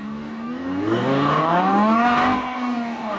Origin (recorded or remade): remade